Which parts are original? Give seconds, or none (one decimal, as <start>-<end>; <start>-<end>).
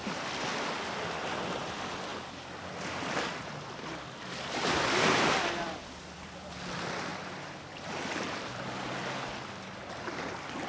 0.0-2.1; 6.5-7.1; 10.2-10.7